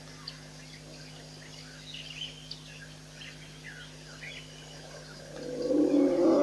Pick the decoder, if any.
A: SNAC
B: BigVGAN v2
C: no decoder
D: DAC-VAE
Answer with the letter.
C